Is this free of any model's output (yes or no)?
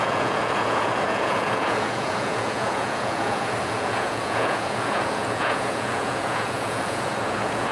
no